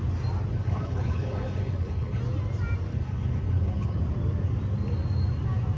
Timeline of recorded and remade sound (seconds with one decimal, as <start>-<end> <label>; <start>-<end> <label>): 0.0-0.5 recorded; 0.5-2.2 remade; 2.2-2.9 recorded; 2.9-4.0 remade; 4.0-5.8 recorded